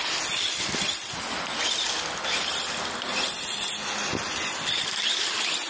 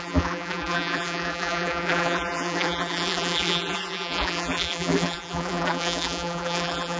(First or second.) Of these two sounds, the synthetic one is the second